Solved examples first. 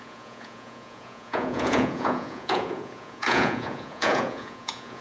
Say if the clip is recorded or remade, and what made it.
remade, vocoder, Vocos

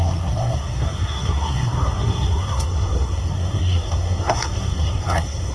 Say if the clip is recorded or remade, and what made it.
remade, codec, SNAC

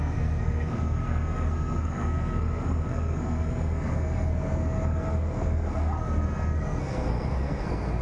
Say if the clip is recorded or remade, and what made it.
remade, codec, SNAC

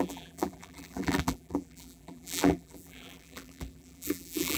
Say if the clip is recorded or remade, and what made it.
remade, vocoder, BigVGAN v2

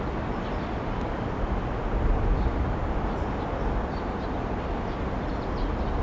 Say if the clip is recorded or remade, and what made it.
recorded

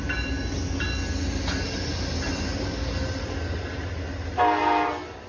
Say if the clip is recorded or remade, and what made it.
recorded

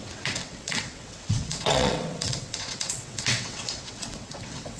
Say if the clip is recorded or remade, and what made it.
remade, vocoder, WaveNeXt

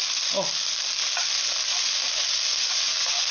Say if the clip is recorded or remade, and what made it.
recorded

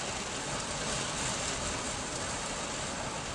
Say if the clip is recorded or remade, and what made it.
recorded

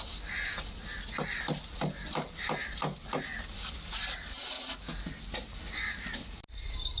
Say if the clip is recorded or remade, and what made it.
recorded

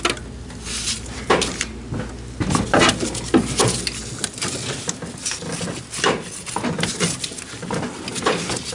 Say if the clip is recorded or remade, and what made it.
recorded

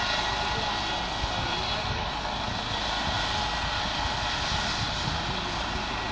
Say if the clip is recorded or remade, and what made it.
recorded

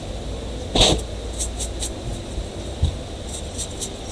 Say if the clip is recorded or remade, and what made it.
recorded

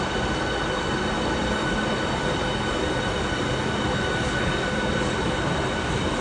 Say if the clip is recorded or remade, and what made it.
recorded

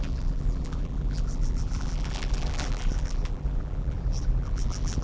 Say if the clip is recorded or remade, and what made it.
remade, vocoder, BigVGAN v2